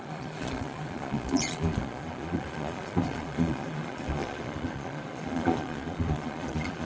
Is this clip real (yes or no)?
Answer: no